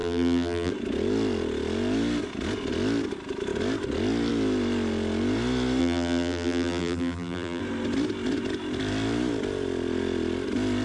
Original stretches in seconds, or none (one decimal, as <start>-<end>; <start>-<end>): 0.7-5.8; 7.6-10.8